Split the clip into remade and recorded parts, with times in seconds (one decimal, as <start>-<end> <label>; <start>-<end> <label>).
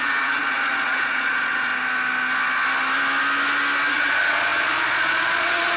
0.0-1.7 remade; 1.7-3.9 recorded; 3.9-5.8 remade